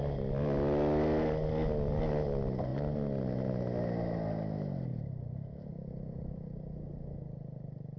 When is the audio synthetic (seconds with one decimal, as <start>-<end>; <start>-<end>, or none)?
none